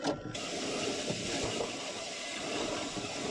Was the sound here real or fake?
real